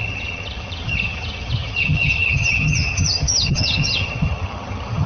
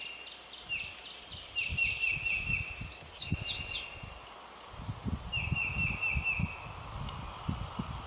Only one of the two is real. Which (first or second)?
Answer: second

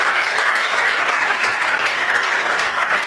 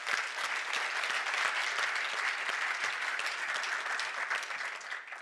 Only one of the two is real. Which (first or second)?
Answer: second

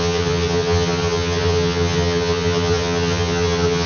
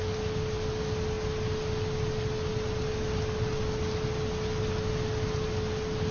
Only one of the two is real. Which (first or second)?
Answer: second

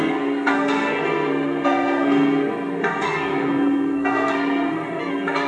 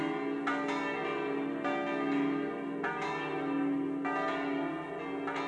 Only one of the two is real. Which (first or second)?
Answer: second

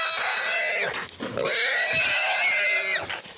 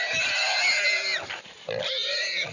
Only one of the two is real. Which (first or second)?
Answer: first